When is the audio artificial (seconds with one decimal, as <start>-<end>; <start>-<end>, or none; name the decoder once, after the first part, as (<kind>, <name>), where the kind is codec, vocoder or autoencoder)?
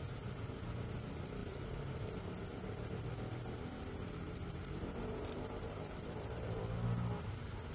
1.4-2.2 (vocoder, BigVGAN v2); 3.8-6.6